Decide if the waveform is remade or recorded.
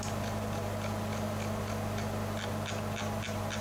recorded